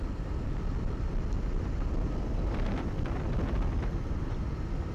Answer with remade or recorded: recorded